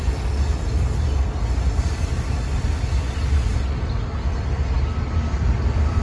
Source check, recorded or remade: recorded